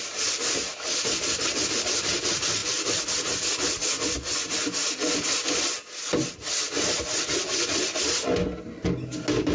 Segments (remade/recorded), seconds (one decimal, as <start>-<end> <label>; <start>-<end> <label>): 0.0-9.5 recorded